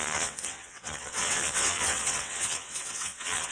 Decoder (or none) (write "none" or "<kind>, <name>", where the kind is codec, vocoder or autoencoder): vocoder, WaveNeXt